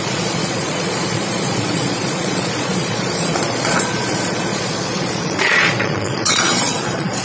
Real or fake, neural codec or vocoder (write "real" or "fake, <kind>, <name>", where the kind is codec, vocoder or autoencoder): fake, vocoder, Vocos